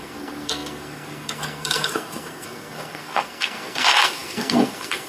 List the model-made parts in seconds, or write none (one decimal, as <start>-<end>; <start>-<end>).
0.0-5.1